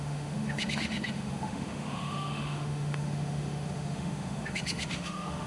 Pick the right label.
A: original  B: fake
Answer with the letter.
B